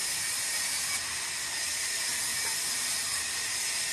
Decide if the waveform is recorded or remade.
recorded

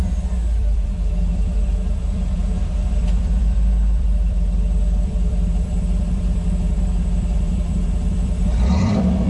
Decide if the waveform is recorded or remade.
remade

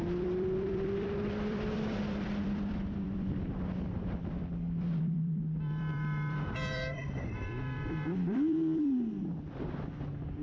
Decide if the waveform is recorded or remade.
remade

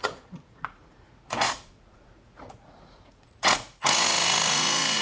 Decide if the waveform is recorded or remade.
remade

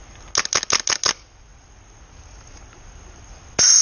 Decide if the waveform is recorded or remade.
recorded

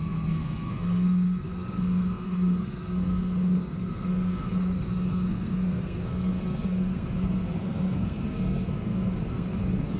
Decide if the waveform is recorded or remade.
remade